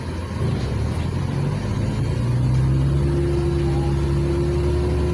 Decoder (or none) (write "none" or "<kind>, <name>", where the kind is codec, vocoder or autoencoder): none